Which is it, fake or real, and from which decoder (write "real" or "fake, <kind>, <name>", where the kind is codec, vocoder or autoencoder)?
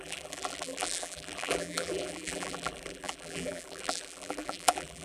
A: fake, vocoder, BigVGAN v2